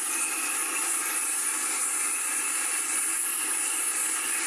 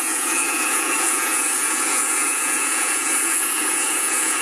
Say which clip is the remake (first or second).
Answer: second